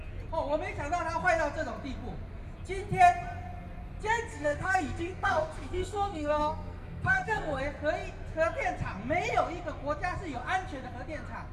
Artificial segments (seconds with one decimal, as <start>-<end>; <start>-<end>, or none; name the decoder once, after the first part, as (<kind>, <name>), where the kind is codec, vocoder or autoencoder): 4.3-7.6 (codec, SNAC)